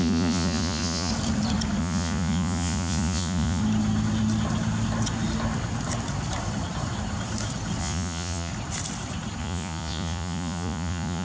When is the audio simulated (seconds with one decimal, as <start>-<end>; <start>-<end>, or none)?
0.0-1.1; 1.8-3.6; 7.8-8.5; 9.4-11.2